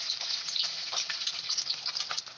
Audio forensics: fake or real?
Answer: real